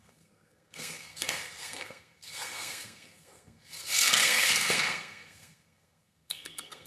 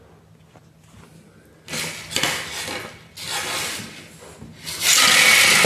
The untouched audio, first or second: second